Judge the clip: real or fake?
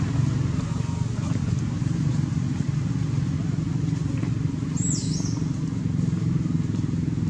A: real